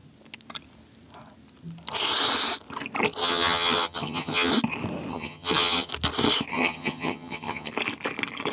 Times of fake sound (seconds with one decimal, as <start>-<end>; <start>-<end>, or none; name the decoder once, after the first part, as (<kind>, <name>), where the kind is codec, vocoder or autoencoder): 3.2-4.5 (vocoder, HiFi-GAN); 5.1-5.9; 6.5-7.7

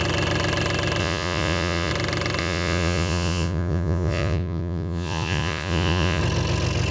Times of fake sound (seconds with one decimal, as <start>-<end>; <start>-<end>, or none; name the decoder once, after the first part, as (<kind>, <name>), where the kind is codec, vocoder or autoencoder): 1.0-1.9 (vocoder, Vocos); 2.4-6.2

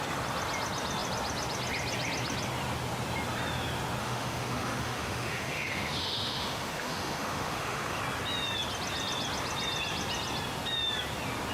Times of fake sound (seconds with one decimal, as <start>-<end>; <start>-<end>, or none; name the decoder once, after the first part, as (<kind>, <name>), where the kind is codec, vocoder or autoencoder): 4.0-8.0 (autoencoder, DAC-VAE)